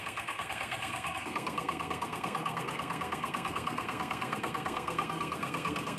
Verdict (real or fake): fake